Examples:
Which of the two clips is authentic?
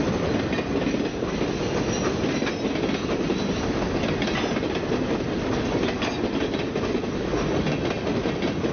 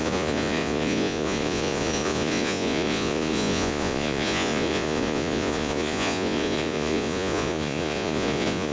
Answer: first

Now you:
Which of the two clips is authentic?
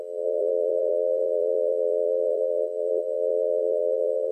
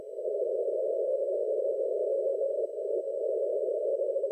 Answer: second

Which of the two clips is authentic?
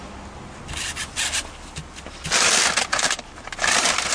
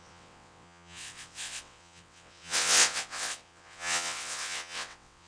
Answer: first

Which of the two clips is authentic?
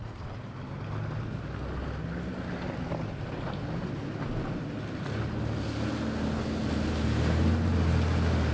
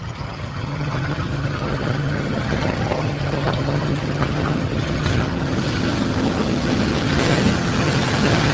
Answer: first